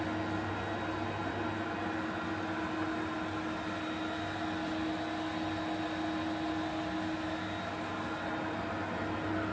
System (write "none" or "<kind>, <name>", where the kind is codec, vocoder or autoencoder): none